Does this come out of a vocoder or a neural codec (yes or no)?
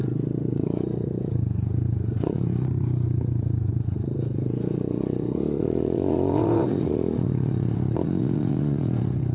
yes